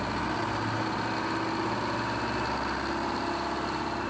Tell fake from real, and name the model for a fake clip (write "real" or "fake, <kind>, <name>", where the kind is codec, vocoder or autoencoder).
real